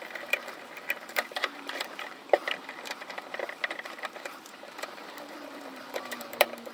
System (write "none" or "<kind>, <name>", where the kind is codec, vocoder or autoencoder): vocoder, BigVGAN v2